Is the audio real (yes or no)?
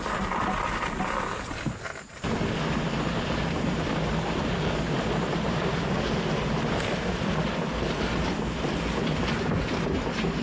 yes